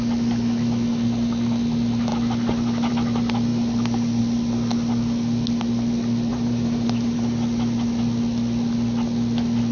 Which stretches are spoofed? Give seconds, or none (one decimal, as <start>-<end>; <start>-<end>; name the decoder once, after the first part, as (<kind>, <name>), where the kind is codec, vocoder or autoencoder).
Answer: 6.3-7.2 (vocoder, BigVGAN v2)